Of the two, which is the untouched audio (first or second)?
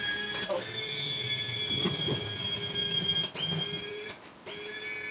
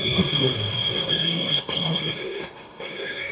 first